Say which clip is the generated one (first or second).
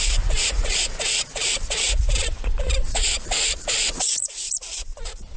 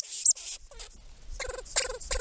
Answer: first